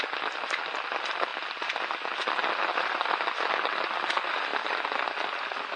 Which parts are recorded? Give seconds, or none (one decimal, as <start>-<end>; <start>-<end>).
0.0-5.8